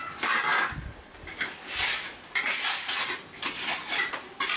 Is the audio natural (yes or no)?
yes